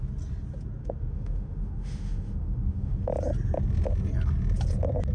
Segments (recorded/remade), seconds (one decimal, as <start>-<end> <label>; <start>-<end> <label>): 0.0-0.8 recorded; 0.8-3.1 remade; 3.1-5.1 recorded